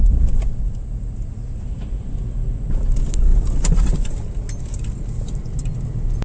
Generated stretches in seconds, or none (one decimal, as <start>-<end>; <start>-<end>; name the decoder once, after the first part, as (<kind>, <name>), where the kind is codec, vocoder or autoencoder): 0.8-1.6 (vocoder, BigVGAN v2)

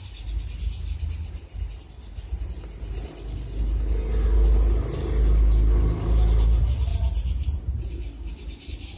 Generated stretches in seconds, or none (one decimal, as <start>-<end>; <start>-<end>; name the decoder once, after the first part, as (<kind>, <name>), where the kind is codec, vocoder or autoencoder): 6.9-7.6 (vocoder, BigVGAN v2)

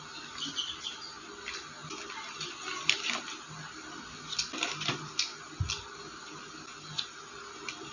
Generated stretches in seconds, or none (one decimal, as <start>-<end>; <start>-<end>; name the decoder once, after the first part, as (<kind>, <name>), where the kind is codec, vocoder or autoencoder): none